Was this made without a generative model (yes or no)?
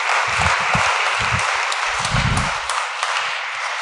no